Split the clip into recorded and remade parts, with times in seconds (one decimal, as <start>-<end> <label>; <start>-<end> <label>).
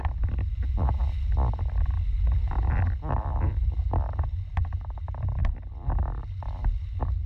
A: 0.0-7.3 recorded